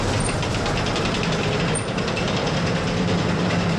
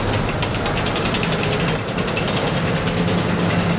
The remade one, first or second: first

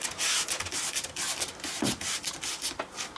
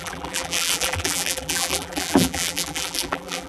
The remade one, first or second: second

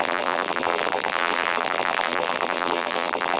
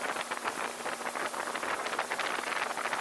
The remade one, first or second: first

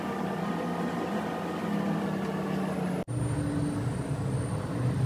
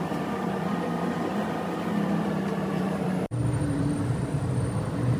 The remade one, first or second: second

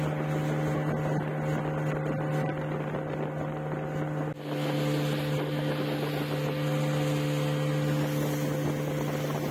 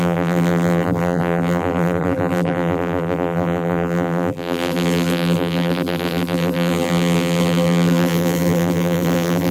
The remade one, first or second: second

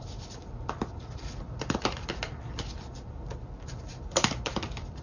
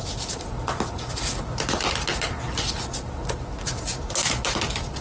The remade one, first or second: first